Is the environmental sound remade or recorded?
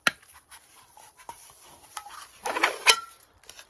recorded